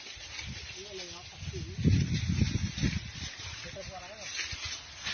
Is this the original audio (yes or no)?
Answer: yes